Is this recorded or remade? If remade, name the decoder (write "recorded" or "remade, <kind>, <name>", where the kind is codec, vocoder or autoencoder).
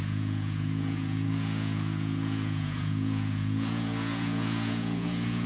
remade, vocoder, Vocos